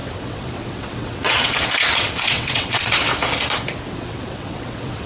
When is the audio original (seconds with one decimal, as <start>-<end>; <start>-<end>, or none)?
3.1-3.9